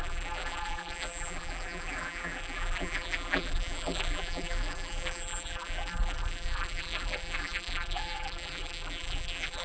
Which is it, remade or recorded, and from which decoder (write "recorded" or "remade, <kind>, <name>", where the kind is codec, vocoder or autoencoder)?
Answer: remade, vocoder, BigVGAN v2